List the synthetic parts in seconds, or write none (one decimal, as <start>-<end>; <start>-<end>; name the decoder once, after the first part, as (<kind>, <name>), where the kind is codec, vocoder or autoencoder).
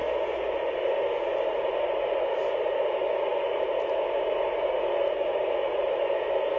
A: none